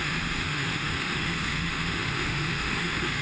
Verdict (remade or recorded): remade